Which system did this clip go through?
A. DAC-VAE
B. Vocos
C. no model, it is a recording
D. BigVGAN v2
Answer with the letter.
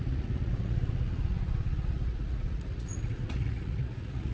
B